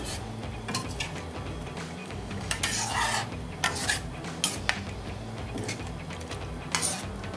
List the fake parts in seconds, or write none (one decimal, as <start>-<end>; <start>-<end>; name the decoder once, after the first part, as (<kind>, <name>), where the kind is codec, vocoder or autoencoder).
2.0-2.6 (codec, DAC)